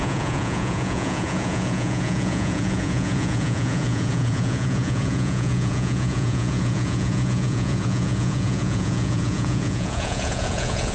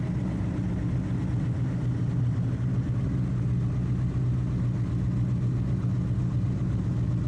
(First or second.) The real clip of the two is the second